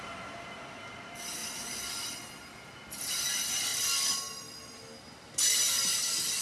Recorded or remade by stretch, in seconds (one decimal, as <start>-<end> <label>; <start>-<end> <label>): 0.0-6.4 recorded

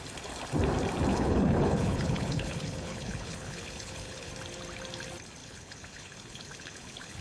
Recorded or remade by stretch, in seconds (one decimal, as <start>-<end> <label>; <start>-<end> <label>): 0.0-1.1 recorded; 1.1-4.3 remade; 4.3-5.4 recorded; 5.4-7.2 remade

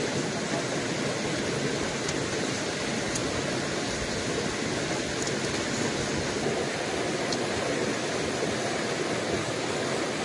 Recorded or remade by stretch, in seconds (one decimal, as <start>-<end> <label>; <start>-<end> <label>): 0.0-10.2 recorded

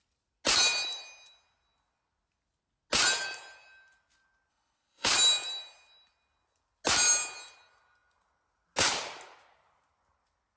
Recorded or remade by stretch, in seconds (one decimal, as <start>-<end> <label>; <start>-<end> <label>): 0.0-4.5 recorded; 4.5-5.1 remade; 5.1-10.6 recorded

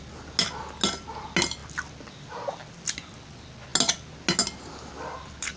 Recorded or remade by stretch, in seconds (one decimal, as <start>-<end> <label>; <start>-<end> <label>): 0.0-5.6 recorded

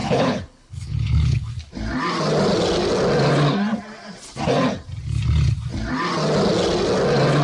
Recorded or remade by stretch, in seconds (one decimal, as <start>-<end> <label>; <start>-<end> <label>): 0.0-1.5 remade; 1.5-7.4 recorded

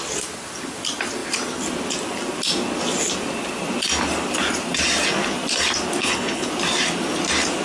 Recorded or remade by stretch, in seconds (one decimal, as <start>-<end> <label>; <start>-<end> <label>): 0.0-6.0 recorded; 6.0-6.5 remade; 6.5-7.6 recorded